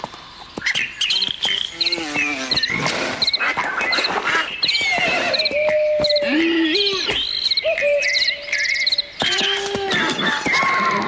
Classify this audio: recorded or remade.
recorded